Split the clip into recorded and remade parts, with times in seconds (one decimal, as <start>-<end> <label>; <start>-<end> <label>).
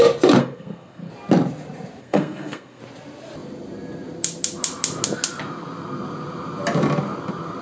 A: 0.0-0.4 recorded; 0.4-1.1 remade; 1.1-2.0 recorded; 2.0-2.8 remade; 2.8-7.6 recorded